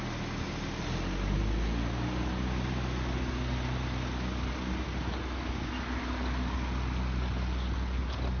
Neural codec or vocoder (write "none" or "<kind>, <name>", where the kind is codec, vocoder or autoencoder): none